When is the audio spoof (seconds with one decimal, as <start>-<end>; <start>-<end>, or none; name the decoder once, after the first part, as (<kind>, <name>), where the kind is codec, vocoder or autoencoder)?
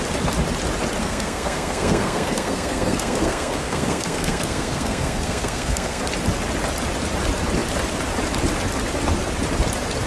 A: 1.0-6.0 (codec, SNAC)